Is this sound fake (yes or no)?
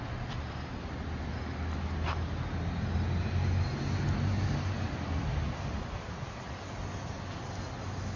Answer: no